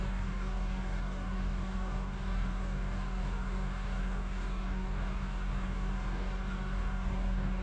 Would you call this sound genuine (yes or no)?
no